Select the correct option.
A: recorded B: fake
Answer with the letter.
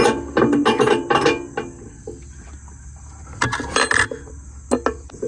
A